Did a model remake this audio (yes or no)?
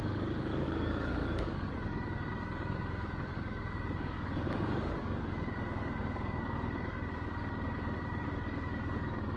yes